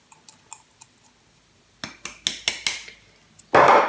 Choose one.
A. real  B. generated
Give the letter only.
A